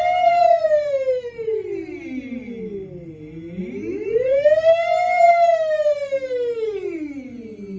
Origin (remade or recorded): recorded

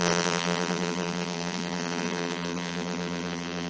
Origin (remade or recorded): remade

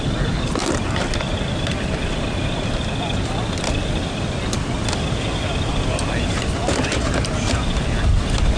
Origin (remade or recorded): recorded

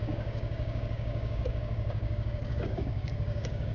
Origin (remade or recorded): remade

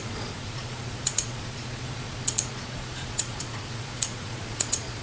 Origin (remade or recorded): remade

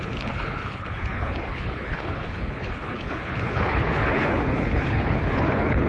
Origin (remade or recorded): remade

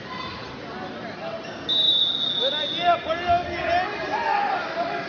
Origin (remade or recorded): recorded